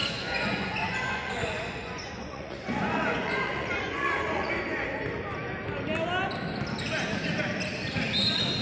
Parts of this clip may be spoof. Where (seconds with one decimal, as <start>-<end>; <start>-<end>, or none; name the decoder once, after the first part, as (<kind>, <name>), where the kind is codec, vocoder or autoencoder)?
0.0-4.5 (vocoder, Vocos)